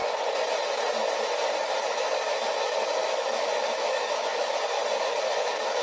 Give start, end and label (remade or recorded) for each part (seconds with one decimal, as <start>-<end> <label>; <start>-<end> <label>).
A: 0.0-1.8 recorded; 1.8-4.8 remade; 4.8-5.3 recorded; 5.3-5.8 remade